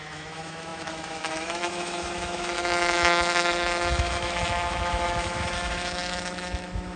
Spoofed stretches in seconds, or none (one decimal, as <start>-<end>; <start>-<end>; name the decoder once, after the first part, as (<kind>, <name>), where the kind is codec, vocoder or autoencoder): 0.0-7.0 (autoencoder, DAC-VAE)

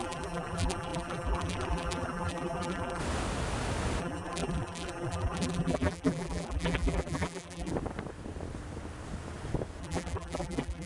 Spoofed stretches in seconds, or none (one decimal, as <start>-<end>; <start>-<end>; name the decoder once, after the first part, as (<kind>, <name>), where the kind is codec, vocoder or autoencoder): 0.0-3.0 (vocoder, BigVGAN v2); 4.0-7.7; 9.8-10.9

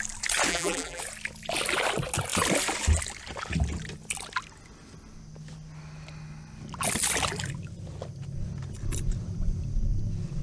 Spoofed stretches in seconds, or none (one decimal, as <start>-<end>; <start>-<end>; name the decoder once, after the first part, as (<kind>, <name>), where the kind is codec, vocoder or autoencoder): 0.5-1.0 (vocoder, BigVGAN v2)

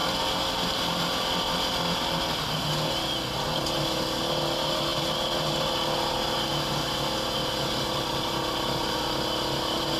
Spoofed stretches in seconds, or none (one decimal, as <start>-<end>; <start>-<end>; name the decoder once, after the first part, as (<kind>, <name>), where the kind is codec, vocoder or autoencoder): none

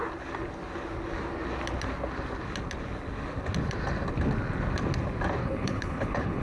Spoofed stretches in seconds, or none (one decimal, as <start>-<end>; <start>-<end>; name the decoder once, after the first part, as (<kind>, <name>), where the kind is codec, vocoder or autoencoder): 5.4-6.4 (codec, HILCodec)

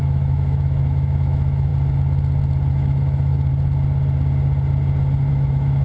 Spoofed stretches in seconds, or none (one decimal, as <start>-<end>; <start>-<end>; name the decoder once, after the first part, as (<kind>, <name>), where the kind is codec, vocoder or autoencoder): 0.0-1.7 (autoencoder, DAC-VAE); 2.7-3.5; 5.3-5.8

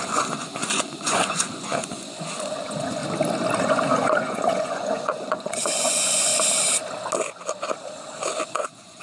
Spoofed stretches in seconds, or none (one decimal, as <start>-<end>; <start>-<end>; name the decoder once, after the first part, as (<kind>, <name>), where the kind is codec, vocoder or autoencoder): 0.0-3.0 (vocoder, Vocos); 3.6-6.3; 8.5-9.0

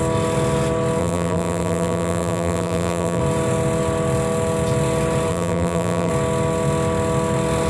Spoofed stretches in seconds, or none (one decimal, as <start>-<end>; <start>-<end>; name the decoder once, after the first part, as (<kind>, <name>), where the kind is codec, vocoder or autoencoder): 1.0-3.2 (vocoder, BigVGAN v2); 5.3-6.1